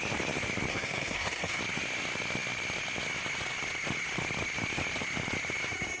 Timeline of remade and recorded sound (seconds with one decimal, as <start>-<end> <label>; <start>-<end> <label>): 0.0-0.7 recorded; 0.7-1.6 remade; 1.6-6.0 recorded